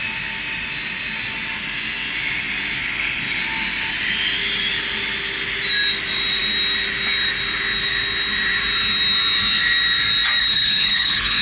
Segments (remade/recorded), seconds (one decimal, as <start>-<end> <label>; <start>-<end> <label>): 0.0-2.8 recorded; 2.8-3.4 remade; 3.4-10.4 recorded; 10.4-11.4 remade

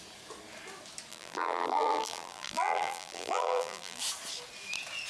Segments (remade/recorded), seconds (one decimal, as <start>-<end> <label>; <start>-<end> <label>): 0.0-1.1 recorded; 1.1-4.0 remade; 4.0-5.1 recorded

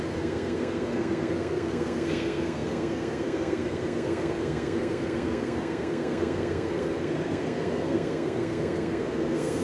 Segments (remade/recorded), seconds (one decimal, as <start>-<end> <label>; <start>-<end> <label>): 0.0-9.6 remade